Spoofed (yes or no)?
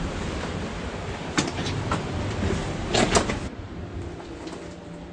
no